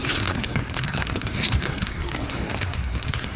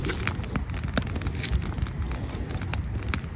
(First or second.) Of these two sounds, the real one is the second